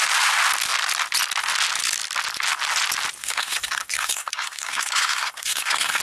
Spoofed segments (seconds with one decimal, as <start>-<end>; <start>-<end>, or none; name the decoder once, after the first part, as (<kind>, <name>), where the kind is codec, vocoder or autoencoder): 3.2-6.0 (codec, SNAC)